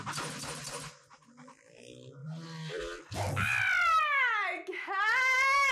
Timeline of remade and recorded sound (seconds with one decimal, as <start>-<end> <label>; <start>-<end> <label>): 0.0-5.7 recorded